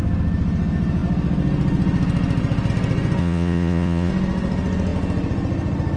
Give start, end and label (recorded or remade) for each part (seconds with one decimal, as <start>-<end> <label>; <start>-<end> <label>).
0.0-3.2 recorded; 3.2-4.1 remade; 4.1-6.0 recorded